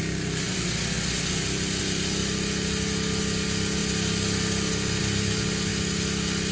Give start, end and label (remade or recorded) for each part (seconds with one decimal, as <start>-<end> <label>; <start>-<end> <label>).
0.0-6.5 recorded